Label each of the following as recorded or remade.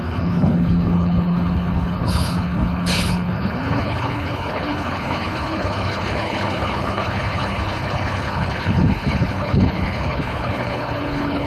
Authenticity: remade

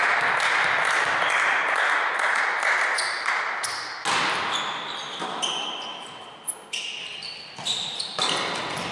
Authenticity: recorded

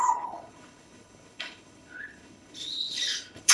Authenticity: remade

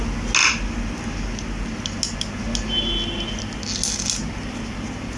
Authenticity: recorded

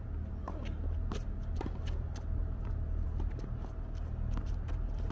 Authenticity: recorded